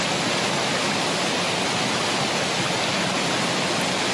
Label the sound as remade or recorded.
recorded